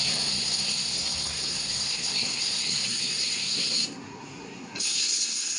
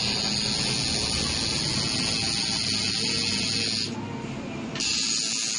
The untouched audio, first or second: second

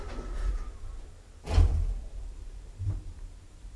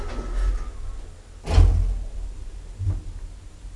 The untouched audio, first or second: second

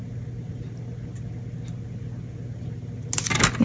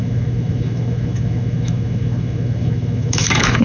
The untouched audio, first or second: first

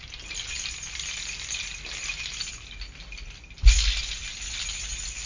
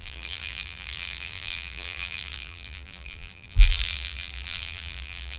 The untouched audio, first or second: first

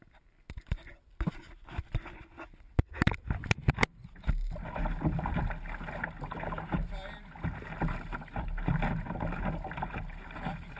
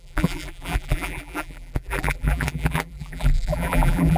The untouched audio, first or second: first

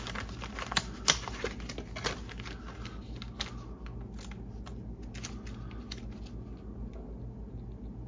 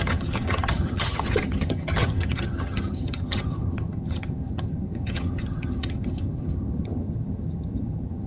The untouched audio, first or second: first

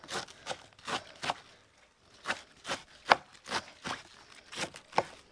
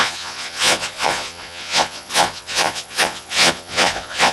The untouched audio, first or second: first